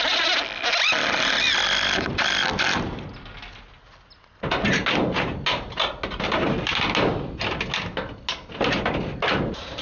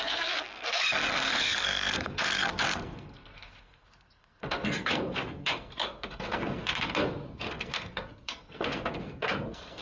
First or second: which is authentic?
first